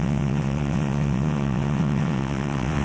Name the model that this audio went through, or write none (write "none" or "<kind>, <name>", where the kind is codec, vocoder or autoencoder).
vocoder, WaveNeXt